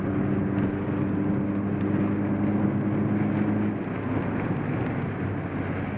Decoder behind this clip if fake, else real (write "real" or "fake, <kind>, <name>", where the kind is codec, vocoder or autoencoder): real